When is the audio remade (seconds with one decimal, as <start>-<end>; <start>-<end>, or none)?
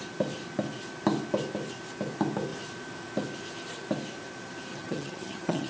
4.7-5.7